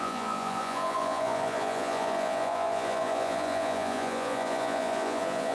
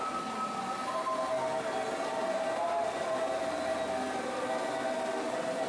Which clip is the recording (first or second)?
second